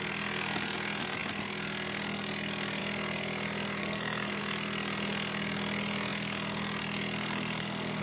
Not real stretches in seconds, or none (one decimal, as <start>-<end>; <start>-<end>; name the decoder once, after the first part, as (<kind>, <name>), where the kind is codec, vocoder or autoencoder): 3.8-4.4 (codec, SNAC); 7.2-8.0